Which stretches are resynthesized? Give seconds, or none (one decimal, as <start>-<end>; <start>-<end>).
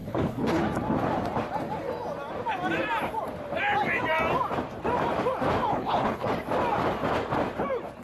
0.0-0.6; 5.7-6.3